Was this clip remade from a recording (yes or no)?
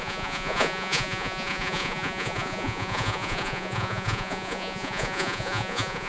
yes